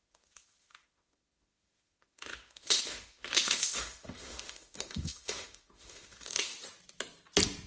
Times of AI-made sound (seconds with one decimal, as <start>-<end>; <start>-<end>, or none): 0.0-6.5